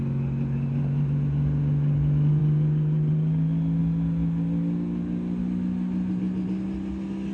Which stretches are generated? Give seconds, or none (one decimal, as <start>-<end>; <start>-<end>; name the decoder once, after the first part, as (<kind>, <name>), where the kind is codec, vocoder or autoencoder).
none

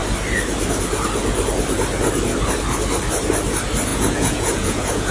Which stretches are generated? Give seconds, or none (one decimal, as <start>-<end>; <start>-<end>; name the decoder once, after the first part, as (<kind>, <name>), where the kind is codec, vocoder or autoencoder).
3.9-5.1 (vocoder, Vocos)